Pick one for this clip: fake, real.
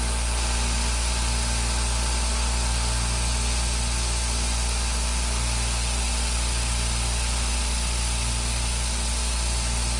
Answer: real